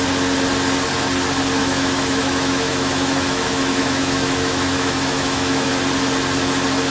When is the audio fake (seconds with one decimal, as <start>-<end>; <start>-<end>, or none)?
1.6-5.7